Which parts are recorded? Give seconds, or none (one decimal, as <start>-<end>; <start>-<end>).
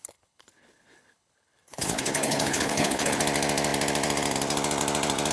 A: 3.2-5.3